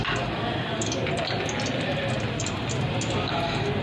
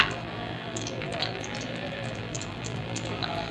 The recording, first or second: first